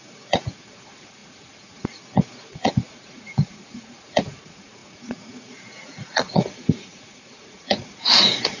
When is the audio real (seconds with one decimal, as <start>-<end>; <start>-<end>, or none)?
none